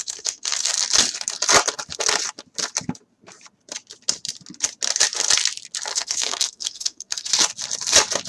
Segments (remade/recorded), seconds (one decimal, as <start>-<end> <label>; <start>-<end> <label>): 0.0-0.7 remade; 0.7-5.9 recorded; 5.9-7.3 remade; 7.3-8.3 recorded